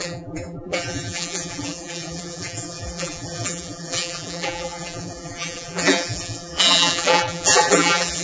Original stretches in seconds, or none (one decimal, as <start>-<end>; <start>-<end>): none

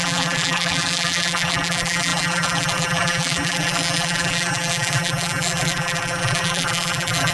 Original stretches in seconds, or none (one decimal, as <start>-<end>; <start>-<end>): none

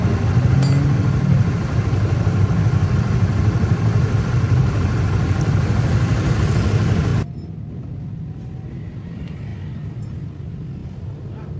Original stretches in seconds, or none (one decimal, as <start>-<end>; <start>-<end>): 0.0-11.6

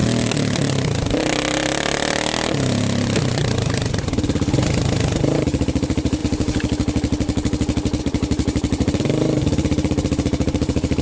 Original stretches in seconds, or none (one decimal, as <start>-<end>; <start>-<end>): 0.0-3.3; 6.2-8.0

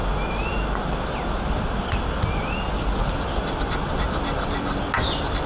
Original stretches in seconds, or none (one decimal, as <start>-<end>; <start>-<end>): 0.0-5.5

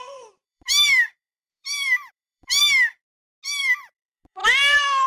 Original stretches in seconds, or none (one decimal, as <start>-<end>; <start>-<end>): 2.6-3.6

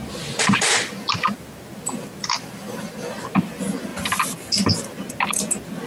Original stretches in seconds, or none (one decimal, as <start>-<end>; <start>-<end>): 3.5-5.9